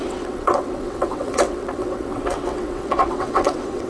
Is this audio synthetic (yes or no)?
yes